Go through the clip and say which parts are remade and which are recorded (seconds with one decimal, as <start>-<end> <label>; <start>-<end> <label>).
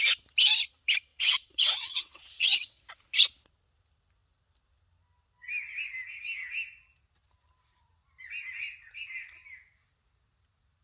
0.0-1.1 recorded; 1.1-2.9 remade; 2.9-10.8 recorded